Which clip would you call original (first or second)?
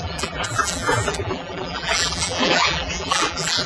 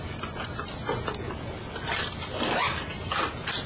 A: second